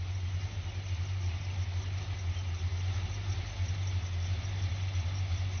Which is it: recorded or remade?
recorded